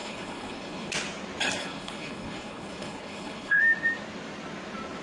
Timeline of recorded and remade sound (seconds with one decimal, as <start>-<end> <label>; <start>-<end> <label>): 0.0-0.9 remade; 0.9-1.6 recorded; 1.6-3.6 remade; 3.6-5.0 recorded

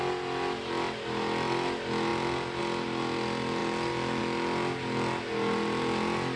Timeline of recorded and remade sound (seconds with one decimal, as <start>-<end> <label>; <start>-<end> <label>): 0.0-6.4 recorded

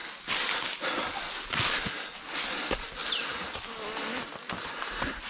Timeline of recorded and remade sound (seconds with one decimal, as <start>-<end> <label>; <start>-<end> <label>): 0.0-5.3 recorded

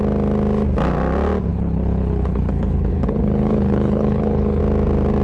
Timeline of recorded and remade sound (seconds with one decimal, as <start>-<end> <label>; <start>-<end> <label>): 0.0-1.5 recorded; 1.5-4.6 remade; 4.6-5.2 recorded

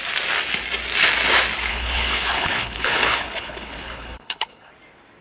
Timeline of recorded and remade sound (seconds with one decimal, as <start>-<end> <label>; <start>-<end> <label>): 0.0-1.7 recorded; 1.7-4.7 remade; 4.7-5.2 recorded